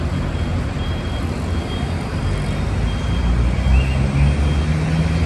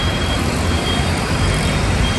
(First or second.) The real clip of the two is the first